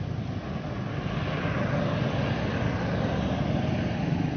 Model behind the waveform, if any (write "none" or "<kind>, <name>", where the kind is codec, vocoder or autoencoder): none